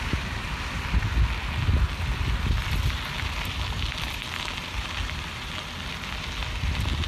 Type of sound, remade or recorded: recorded